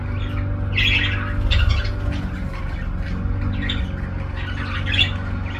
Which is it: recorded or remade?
recorded